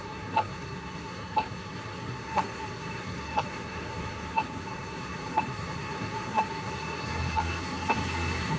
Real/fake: fake